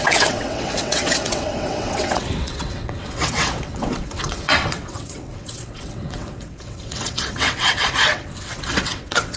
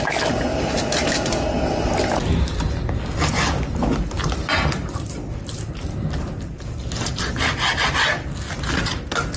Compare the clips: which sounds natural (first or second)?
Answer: second